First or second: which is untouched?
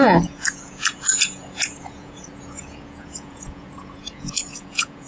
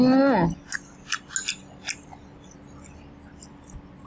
second